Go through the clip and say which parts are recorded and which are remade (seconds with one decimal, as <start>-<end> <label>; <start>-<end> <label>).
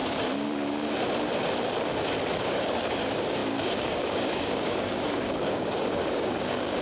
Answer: 0.0-2.4 recorded; 2.4-6.8 remade